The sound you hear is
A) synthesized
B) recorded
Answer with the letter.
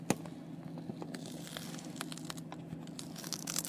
B